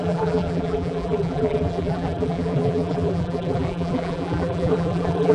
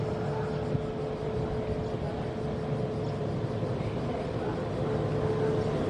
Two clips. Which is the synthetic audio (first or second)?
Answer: first